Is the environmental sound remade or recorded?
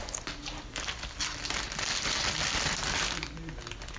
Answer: recorded